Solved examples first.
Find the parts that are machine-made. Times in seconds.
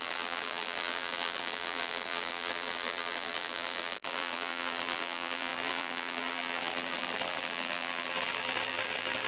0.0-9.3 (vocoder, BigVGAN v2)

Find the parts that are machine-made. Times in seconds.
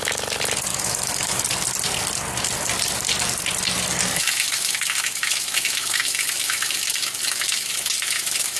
0.7-1.4 (autoencoder, DAC-VAE); 4.1-8.6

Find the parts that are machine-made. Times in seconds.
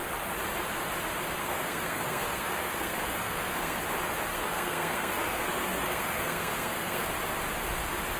1.4-3.8 (codec, SNAC); 4.3-7.1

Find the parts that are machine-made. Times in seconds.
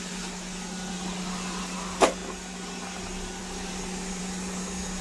none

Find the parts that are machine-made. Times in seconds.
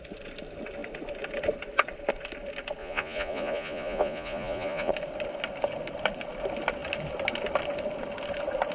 2.8-4.9 (vocoder, Vocos)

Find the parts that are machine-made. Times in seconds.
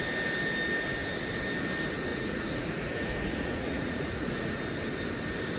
2.1-4.6 (vocoder, Vocos)